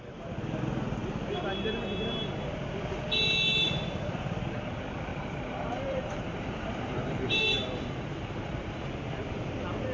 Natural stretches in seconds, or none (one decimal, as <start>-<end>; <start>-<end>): 0.0-5.1; 8.9-9.9